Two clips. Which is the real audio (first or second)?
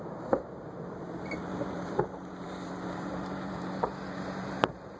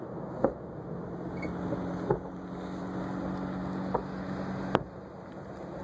second